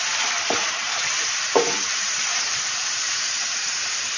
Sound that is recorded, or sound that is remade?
remade